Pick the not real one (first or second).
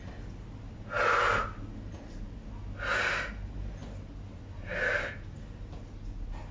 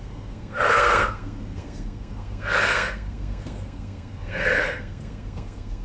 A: second